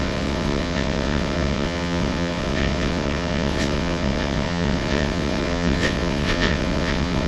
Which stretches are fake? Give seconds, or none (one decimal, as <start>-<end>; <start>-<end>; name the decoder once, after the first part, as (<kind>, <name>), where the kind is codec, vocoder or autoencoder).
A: 0.0-7.3 (vocoder, WaveNeXt)